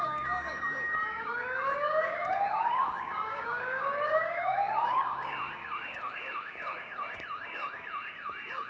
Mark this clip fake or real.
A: fake